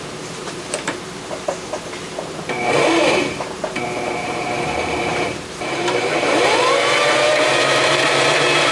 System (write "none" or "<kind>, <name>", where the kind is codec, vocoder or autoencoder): vocoder, BigVGAN v2